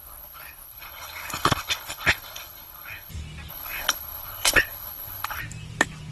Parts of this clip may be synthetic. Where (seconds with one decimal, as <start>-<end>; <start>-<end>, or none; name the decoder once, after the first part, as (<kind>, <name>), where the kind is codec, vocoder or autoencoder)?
0.0-3.1 (codec, HILCodec); 3.5-5.4